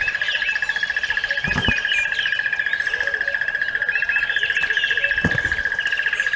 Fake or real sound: real